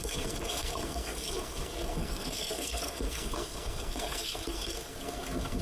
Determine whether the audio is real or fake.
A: fake